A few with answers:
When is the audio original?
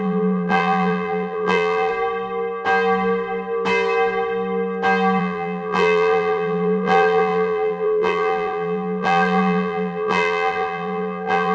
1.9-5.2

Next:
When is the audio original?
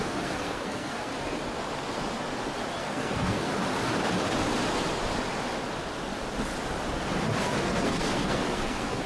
1.1-2.8; 3.5-7.4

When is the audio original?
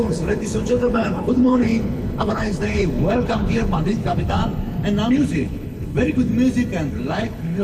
4.4-5.1; 6.3-6.9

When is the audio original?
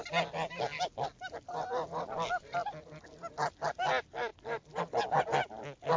0.0-6.0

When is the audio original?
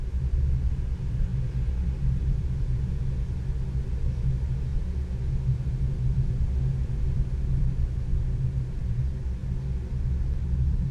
0.0-10.9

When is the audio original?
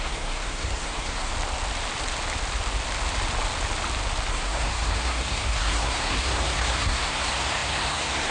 1.3-4.3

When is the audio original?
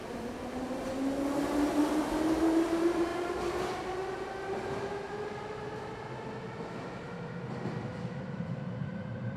0.0-2.4; 3.1-8.2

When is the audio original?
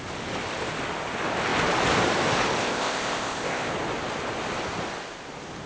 0.0-2.6; 3.7-5.7